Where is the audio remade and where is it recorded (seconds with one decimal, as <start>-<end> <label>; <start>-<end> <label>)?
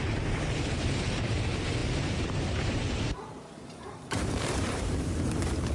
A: 0.0-5.7 remade